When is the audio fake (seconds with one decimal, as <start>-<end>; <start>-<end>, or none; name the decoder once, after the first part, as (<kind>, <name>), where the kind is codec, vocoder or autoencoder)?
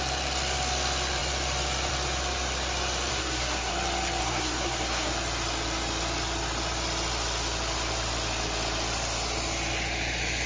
3.1-3.7 (codec, SNAC); 4.2-5.1